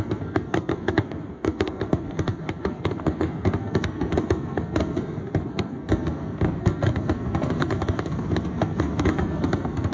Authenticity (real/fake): fake